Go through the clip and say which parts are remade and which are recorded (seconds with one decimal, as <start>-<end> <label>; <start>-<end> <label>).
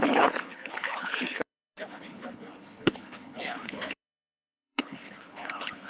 0.0-5.9 remade